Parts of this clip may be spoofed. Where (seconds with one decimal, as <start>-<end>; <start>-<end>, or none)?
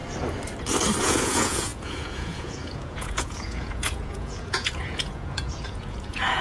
1.0-6.4